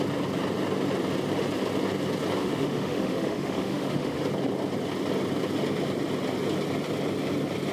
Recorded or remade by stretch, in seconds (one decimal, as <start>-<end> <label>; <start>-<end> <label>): 0.0-2.4 recorded; 2.4-4.2 remade; 4.2-7.7 recorded